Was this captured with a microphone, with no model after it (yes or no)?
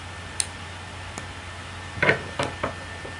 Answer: yes